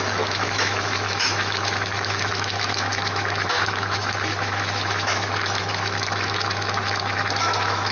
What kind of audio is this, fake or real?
fake